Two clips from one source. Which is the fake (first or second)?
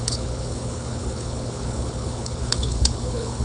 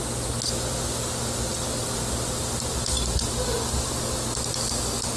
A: first